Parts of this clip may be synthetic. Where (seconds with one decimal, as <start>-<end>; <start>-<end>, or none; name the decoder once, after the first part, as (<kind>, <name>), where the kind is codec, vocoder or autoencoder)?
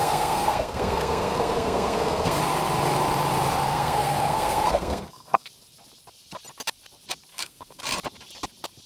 0.0-2.4 (codec, SNAC); 3.7-5.5; 7.3-7.8